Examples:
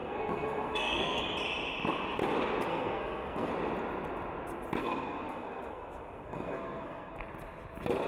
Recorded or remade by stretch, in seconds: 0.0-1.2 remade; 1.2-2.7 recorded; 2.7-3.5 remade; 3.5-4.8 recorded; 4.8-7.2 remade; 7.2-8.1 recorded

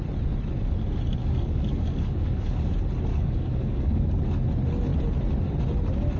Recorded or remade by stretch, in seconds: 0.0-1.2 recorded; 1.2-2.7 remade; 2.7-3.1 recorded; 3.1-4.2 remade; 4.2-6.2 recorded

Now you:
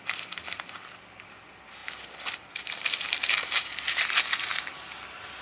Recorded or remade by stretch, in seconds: 0.0-5.4 recorded

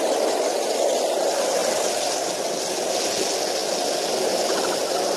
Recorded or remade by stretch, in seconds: 0.0-5.2 recorded